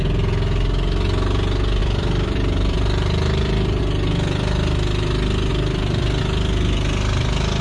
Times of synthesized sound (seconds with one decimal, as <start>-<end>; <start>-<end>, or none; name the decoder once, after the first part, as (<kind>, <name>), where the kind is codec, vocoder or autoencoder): 1.8-3.8 (vocoder, BigVGAN v2)